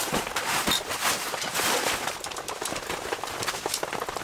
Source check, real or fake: real